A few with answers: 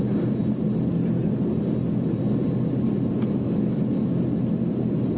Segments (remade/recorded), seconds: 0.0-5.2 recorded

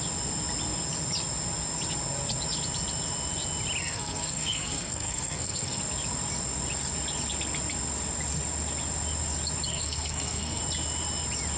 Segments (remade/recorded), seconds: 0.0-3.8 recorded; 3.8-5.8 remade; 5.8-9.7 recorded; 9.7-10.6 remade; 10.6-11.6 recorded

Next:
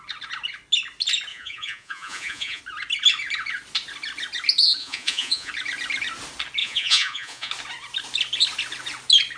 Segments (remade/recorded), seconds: 0.0-1.3 recorded; 1.3-2.6 remade; 2.6-4.8 recorded; 4.8-5.5 remade; 5.5-6.6 recorded; 6.6-7.5 remade; 7.5-9.4 recorded

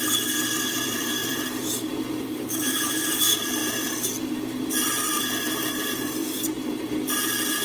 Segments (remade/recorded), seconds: 0.0-7.6 remade

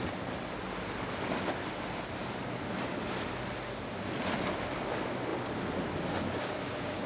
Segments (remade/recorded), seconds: 0.0-7.1 recorded

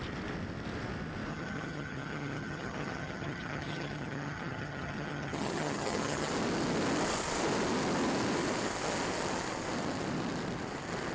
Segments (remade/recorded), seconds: 0.0-1.3 recorded; 1.3-6.3 remade; 6.3-11.1 recorded